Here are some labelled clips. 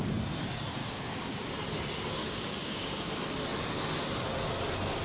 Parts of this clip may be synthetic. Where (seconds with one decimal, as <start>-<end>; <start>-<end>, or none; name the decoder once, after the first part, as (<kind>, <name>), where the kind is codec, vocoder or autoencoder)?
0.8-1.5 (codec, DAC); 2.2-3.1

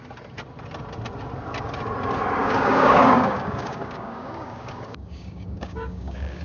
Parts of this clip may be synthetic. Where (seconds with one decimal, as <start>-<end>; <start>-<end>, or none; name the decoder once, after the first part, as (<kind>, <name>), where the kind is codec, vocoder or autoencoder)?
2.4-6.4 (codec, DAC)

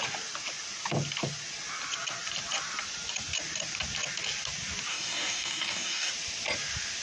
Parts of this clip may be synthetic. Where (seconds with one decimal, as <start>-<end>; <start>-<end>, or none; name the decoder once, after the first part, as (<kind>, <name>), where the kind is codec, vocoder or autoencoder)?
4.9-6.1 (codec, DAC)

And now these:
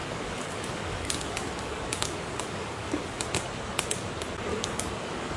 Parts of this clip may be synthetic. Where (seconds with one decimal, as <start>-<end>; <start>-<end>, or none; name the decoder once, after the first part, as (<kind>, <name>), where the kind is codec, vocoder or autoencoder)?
0.0-3.2 (codec, DAC); 4.5-5.4

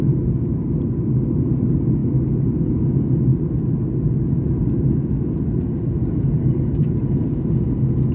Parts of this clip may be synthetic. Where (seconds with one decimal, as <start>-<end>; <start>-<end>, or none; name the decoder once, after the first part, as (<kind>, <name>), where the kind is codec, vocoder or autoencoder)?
6.0-6.9 (codec, DAC)